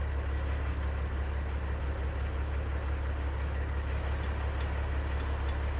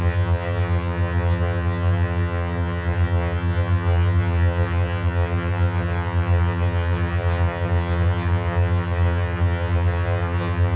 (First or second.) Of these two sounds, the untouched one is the first